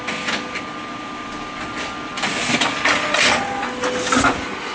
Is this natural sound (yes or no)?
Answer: yes